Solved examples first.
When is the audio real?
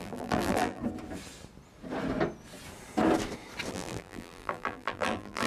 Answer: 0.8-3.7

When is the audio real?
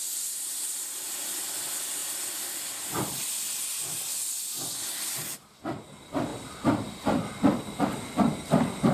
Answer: 0.0-2.0; 3.8-8.9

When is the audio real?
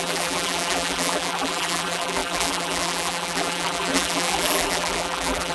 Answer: none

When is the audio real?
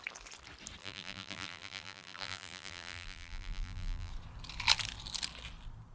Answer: 0.0-0.8; 4.1-5.9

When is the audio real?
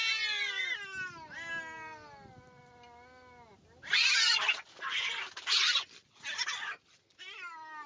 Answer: 0.0-7.9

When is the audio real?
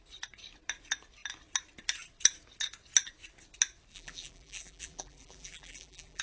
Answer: 0.0-3.9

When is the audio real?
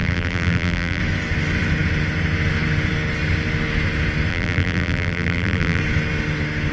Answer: 1.0-4.3; 5.8-6.7